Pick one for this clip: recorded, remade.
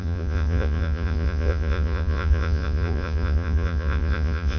remade